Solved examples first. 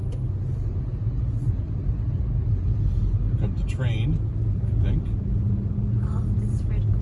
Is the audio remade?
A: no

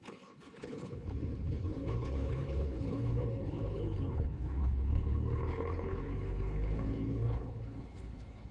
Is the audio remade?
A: yes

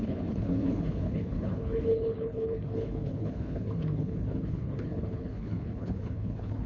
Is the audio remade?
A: yes